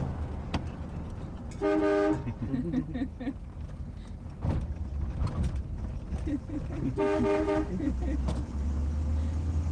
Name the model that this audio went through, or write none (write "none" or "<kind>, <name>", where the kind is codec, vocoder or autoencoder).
none